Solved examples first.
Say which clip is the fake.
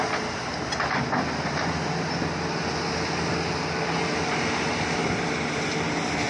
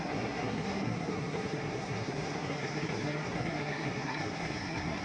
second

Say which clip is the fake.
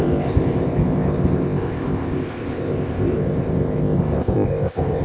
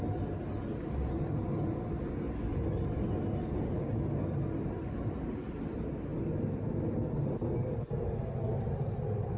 first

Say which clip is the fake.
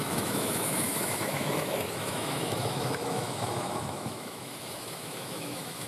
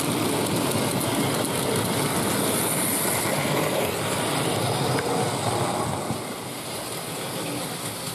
first